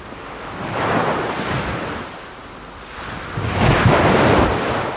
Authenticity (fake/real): real